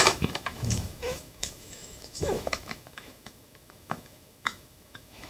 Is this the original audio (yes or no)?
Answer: no